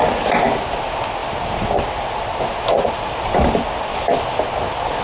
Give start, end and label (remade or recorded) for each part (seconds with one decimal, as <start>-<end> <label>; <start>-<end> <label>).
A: 0.0-1.2 recorded; 1.2-4.2 remade; 4.2-5.0 recorded